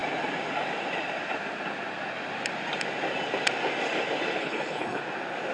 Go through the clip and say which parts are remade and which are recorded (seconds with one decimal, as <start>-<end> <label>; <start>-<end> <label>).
0.0-4.4 recorded; 4.4-5.0 remade; 5.0-5.5 recorded